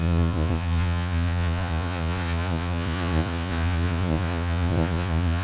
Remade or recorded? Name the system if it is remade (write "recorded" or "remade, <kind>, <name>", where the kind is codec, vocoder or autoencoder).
remade, vocoder, Vocos